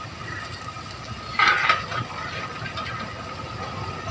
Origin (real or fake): real